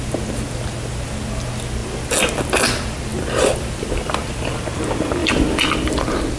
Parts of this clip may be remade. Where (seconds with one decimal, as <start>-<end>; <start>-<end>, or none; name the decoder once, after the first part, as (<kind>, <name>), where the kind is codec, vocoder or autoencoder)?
3.1-4.6 (vocoder, BigVGAN v2); 5.2-6.0